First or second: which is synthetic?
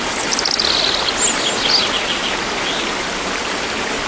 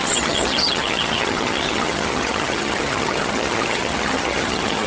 second